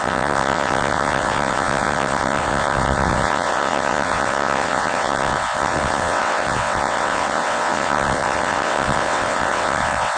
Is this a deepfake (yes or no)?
yes